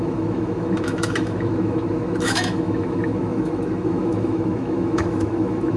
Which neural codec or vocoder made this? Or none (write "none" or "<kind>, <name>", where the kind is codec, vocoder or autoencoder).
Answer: autoencoder, DAC-VAE